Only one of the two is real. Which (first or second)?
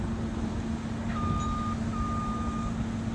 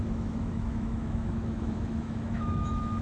first